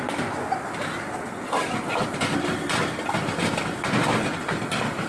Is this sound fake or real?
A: real